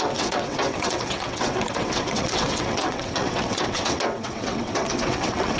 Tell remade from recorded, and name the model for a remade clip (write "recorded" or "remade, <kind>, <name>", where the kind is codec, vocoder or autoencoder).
remade, vocoder, WaveNeXt